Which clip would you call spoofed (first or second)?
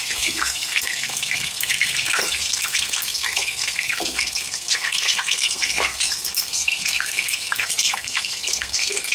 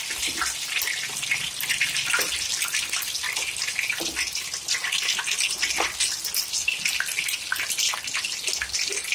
first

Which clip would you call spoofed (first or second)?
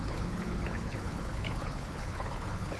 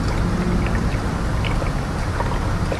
first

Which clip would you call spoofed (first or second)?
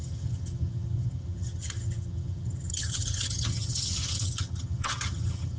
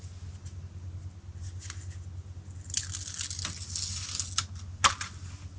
first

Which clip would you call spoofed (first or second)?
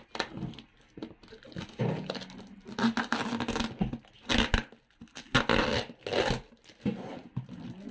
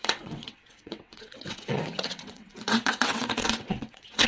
second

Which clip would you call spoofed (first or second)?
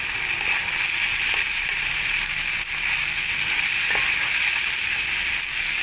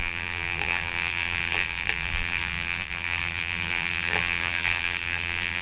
second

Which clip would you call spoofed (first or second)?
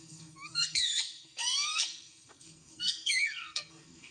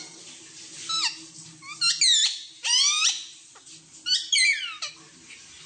first